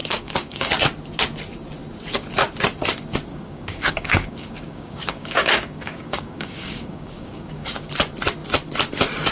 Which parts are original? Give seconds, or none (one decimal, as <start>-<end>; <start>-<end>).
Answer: 0.7-3.3; 7.9-9.3